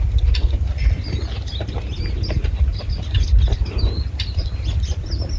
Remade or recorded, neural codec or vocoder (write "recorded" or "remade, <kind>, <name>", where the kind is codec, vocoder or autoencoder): recorded